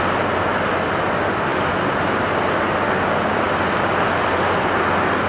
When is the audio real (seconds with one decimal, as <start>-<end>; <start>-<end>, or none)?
0.0-5.3

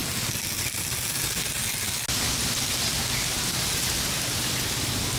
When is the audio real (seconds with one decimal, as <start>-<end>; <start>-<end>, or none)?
0.0-5.2

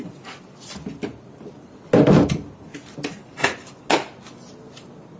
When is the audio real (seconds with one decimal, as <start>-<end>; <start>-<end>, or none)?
0.0-3.2; 3.7-5.2

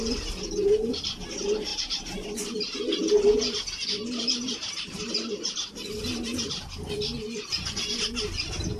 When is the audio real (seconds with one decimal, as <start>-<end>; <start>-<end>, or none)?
0.0-8.8

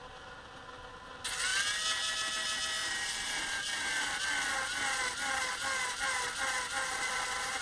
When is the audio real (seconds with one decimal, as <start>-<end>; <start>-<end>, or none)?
0.0-2.8; 4.2-7.6